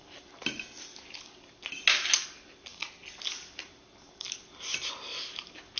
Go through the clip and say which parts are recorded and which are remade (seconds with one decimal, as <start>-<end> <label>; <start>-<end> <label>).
0.0-5.8 recorded